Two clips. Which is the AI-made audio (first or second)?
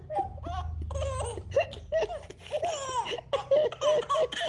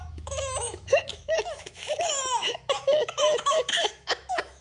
second